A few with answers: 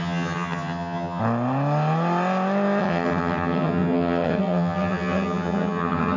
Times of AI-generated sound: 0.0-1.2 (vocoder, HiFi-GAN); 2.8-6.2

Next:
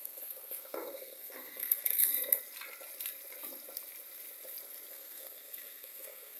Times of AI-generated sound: 0.0-2.1 (codec, SNAC); 4.9-6.4

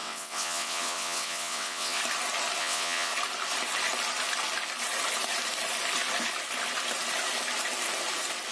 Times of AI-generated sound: 0.0-2.0 (vocoder, WaveNeXt); 2.6-3.1

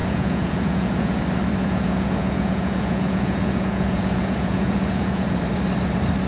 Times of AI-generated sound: 0.0-1.2 (vocoder, Vocos); 1.6-5.4

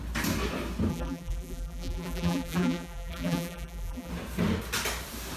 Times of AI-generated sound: 0.9-4.1 (vocoder, BigVGAN v2)